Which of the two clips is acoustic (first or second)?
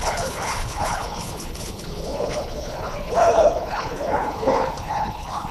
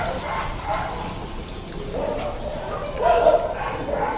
second